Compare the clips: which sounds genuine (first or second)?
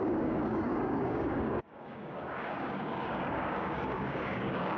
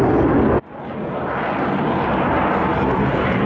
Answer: second